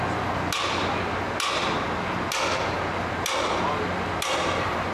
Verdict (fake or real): real